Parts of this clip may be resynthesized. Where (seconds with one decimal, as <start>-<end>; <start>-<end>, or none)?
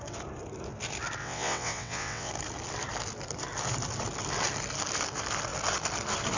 1.2-2.3